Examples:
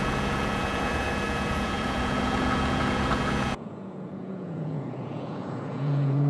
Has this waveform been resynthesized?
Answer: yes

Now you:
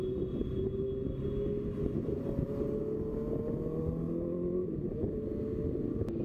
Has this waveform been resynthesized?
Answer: no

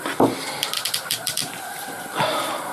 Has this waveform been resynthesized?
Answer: yes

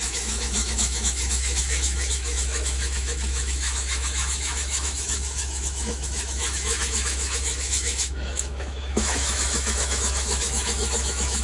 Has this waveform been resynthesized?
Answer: yes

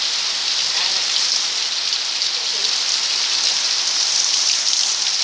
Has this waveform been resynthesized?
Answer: no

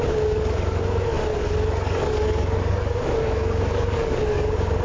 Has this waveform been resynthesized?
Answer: yes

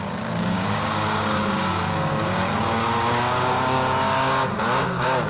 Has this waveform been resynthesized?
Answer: yes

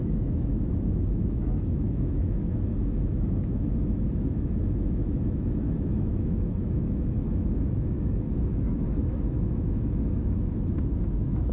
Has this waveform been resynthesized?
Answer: yes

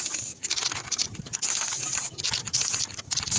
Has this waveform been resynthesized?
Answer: no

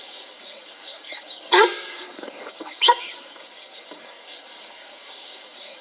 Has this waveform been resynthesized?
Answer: yes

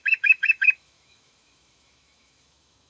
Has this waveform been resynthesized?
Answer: yes